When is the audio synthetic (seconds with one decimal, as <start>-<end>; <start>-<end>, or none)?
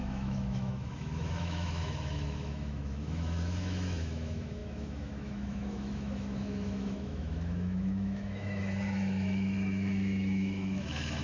0.0-11.2